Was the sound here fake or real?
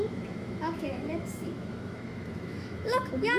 fake